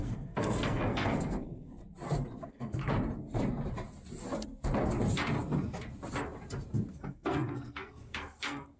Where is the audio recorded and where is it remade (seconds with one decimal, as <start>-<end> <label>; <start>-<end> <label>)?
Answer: 0.0-1.8 remade; 1.8-2.4 recorded; 2.4-2.8 remade; 2.8-6.9 recorded; 6.9-8.8 remade